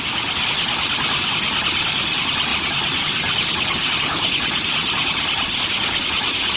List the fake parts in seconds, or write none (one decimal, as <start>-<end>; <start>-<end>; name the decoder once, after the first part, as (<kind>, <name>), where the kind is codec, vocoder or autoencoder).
none